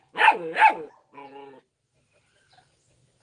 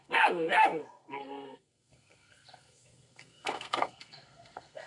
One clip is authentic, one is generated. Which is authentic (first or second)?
first